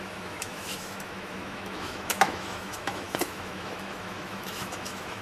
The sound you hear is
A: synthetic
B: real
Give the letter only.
A